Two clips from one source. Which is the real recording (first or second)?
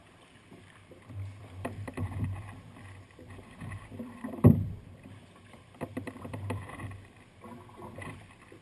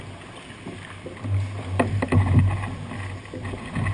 second